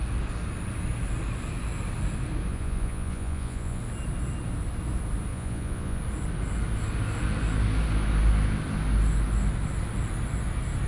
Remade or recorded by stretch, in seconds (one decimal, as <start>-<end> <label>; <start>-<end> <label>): 0.0-2.5 recorded; 2.5-3.8 remade; 3.8-5.3 recorded; 5.3-6.0 remade; 6.0-10.9 recorded

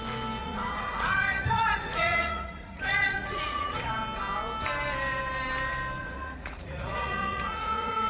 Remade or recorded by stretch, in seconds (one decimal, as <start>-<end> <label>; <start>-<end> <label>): 0.0-0.4 recorded; 0.4-3.9 remade; 3.9-6.0 recorded; 6.0-8.1 remade

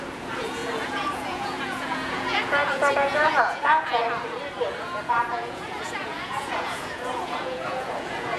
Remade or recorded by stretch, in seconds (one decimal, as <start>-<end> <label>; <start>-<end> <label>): 0.0-4.0 remade; 4.0-4.8 recorded; 4.8-8.4 remade

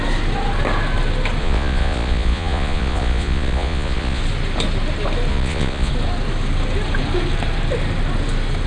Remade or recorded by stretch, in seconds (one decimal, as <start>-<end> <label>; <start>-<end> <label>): 0.0-1.4 recorded; 1.4-4.2 remade; 4.2-5.3 recorded; 5.3-5.9 remade; 5.9-8.7 recorded

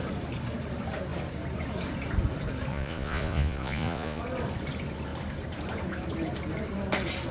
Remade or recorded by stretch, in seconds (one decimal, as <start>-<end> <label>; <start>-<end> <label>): 0.0-2.7 recorded; 2.7-4.2 remade; 4.2-7.3 recorded

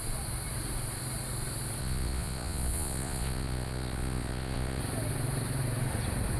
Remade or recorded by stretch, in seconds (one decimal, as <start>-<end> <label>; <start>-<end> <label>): 0.0-1.8 recorded; 1.8-4.8 remade; 4.8-6.4 recorded

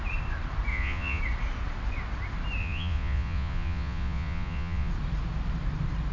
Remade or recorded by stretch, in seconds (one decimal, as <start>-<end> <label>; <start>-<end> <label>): 0.0-0.7 recorded; 0.7-1.2 remade; 1.2-2.6 recorded; 2.6-4.9 remade; 4.9-6.1 recorded